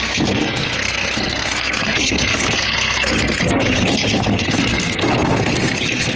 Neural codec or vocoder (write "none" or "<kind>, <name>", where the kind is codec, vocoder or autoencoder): codec, SNAC